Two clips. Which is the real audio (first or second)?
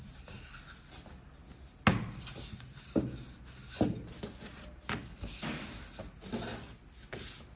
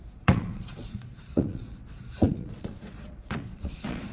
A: first